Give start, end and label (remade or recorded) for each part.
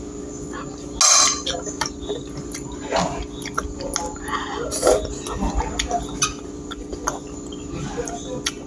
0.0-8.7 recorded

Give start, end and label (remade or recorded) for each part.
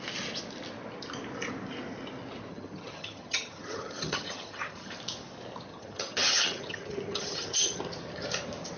0.0-2.5 recorded; 2.5-4.9 remade; 4.9-5.7 recorded; 5.7-7.8 remade; 7.8-8.8 recorded